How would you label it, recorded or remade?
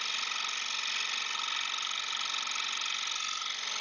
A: recorded